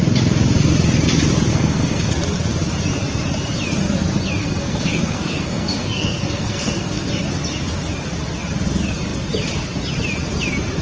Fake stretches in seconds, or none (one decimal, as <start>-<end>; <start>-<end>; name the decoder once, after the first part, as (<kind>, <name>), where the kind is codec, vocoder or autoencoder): 1.5-2.1 (codec, SNAC); 4.4-7.1